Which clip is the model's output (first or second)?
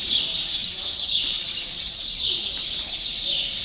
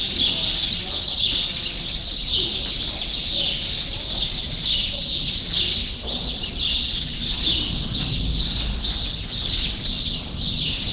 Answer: first